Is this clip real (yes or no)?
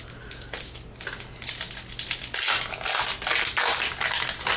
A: yes